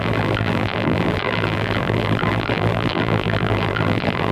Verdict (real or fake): fake